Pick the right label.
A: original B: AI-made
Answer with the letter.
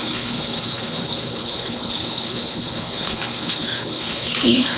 B